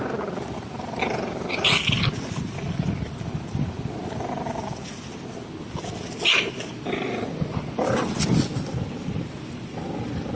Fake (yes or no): no